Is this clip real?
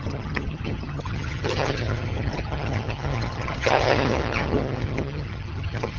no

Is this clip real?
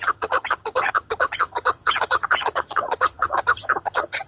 no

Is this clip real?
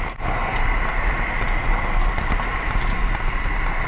yes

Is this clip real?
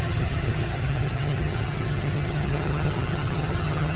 no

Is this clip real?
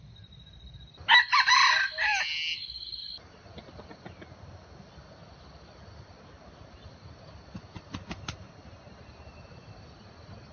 yes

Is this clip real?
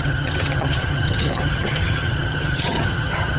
no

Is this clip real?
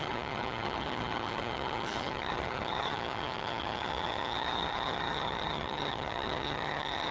no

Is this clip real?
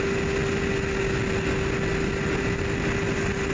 yes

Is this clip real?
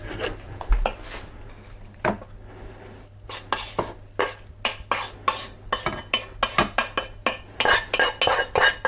yes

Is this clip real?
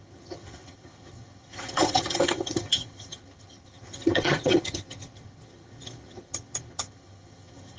no